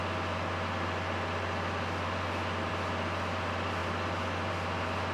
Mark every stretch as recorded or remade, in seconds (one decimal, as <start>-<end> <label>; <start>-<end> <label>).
0.0-5.1 recorded